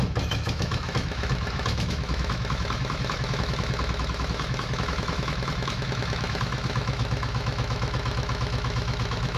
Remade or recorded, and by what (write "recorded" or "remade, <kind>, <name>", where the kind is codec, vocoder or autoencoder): remade, autoencoder, DAC-VAE